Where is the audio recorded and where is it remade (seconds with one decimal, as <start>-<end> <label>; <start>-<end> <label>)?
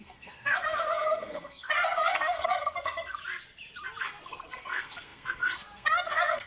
0.0-3.2 remade; 3.2-4.0 recorded; 4.0-6.5 remade